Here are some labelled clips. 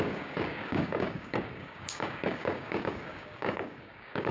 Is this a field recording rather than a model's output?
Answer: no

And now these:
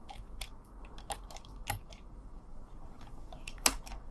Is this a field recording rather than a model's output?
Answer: no